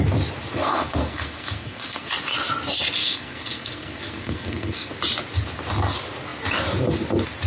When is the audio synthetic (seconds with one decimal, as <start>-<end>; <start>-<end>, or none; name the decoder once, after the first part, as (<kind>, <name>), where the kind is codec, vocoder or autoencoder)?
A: 0.6-2.1 (codec, SNAC); 3.0-4.9